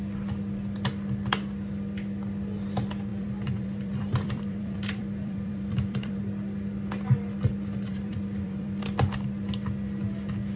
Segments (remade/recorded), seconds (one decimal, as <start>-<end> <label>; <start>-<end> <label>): 0.0-3.1 recorded; 3.1-6.2 remade; 6.2-7.9 recorded; 7.9-8.8 remade; 8.8-10.6 recorded